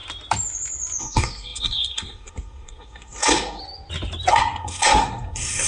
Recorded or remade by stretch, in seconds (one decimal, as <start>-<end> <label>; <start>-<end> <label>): 0.0-1.0 recorded; 1.0-3.6 remade; 3.6-4.3 recorded; 4.3-5.7 remade